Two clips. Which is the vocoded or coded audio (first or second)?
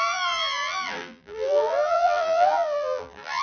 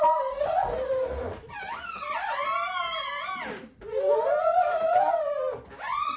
first